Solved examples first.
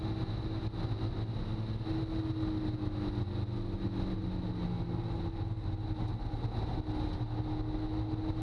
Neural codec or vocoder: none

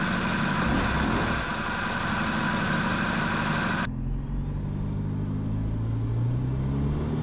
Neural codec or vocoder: none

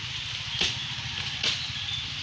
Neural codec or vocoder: none